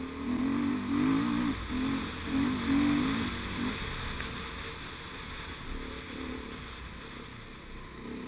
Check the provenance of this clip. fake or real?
real